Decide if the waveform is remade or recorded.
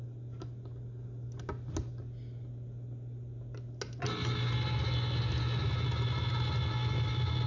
recorded